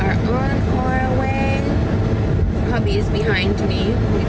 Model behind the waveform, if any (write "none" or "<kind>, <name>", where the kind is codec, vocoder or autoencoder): none